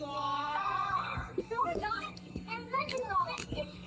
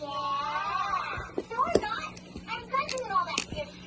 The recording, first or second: second